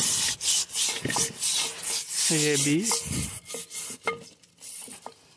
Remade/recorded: recorded